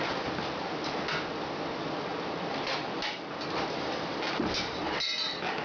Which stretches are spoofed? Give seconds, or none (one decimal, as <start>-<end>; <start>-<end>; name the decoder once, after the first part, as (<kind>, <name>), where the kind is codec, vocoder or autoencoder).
none